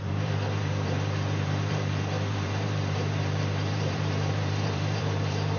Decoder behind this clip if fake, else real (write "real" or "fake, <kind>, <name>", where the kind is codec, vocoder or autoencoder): fake, vocoder, BigVGAN v2